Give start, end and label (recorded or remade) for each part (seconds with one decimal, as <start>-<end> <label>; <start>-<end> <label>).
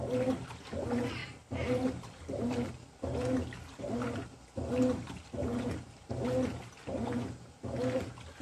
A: 0.0-1.2 recorded; 1.2-2.7 remade; 2.7-8.4 recorded